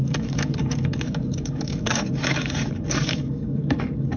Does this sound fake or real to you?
fake